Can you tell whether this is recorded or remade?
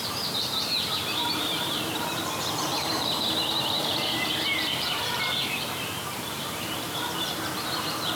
remade